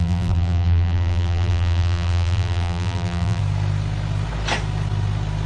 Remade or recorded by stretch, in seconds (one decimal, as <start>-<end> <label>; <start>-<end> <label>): 0.0-3.4 remade; 3.4-5.5 recorded